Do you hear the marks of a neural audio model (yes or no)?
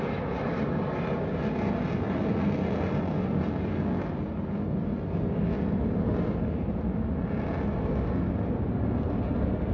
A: no